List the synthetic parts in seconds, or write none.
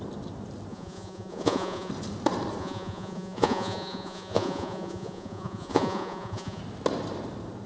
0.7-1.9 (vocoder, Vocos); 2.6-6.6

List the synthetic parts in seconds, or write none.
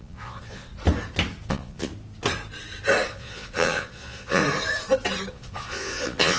0.0-0.7 (vocoder, Vocos); 1.5-1.9; 3.1-4.4; 5.3-6.4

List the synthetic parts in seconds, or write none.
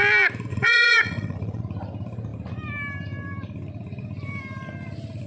0.5-1.6 (vocoder, Vocos)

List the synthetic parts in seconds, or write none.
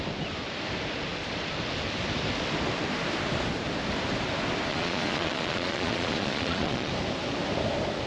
4.7-6.9 (vocoder, Vocos)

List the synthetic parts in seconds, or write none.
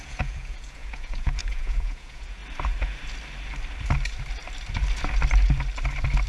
0.0-2.4 (vocoder, Vocos)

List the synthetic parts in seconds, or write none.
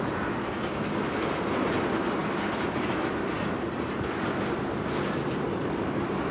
none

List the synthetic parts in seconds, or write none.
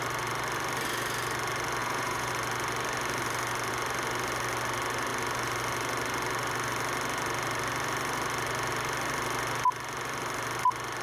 1.8-2.3 (vocoder, Vocos)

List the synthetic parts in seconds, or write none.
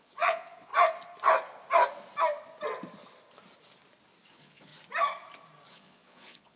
0.0-0.7 (vocoder, Vocos); 4.3-4.7; 5.7-6.6